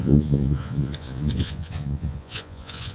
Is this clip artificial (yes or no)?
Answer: yes